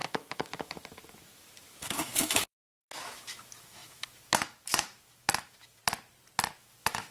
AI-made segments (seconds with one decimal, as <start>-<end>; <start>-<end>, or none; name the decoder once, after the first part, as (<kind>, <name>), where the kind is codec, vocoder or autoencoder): 0.0-5.8 (autoencoder, DAC-VAE); 6.6-7.1